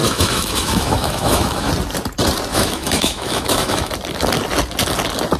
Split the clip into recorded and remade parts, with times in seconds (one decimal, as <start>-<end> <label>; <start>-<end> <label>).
0.0-1.7 remade; 1.7-2.5 recorded; 2.5-3.9 remade; 3.9-5.4 recorded